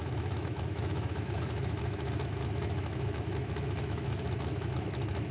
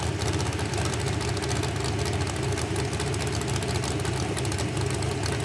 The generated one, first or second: first